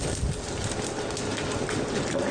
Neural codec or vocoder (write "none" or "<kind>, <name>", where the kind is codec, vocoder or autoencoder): none